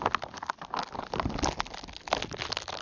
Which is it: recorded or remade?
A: recorded